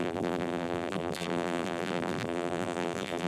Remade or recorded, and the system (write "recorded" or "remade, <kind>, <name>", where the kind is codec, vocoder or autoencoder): remade, vocoder, BigVGAN v2